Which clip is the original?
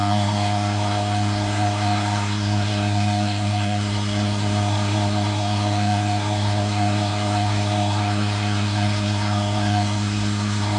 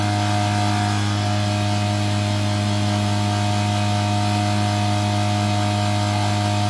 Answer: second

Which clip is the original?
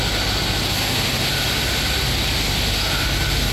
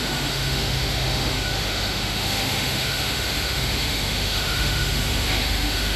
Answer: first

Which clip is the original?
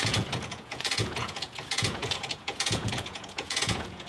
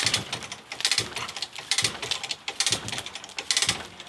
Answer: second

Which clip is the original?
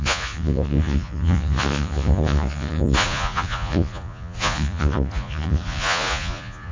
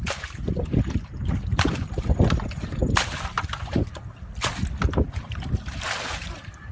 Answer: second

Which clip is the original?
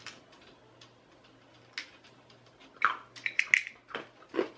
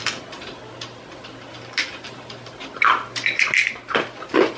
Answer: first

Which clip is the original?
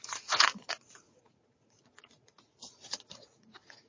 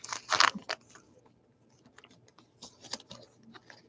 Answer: second